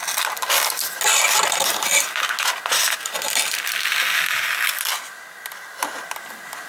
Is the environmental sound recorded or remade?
recorded